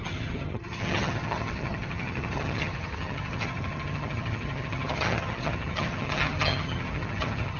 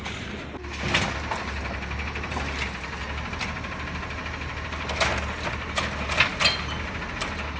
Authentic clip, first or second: second